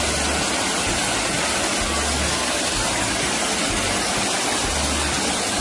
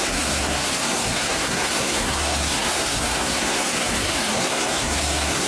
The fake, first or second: second